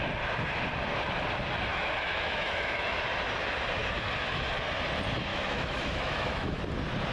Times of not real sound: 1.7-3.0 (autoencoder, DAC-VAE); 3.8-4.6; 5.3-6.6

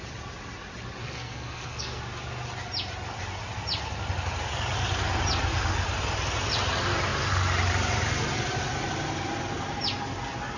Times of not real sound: 1.0-2.0 (codec, SNAC)